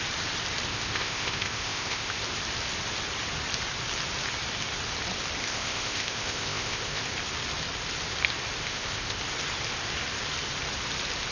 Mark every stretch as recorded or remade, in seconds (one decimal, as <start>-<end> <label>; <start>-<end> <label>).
0.0-0.7 recorded; 0.7-2.2 remade; 2.2-5.4 recorded; 5.4-7.0 remade; 7.0-8.6 recorded; 8.6-9.2 remade; 9.2-11.3 recorded